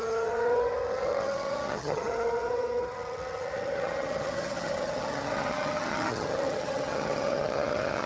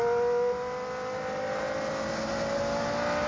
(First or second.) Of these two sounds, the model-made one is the first